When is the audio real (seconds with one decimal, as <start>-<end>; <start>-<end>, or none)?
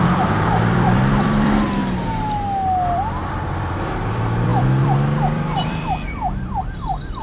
1.8-3.3